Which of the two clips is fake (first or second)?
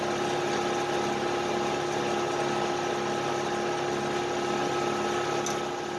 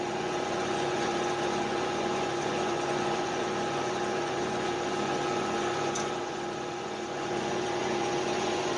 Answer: second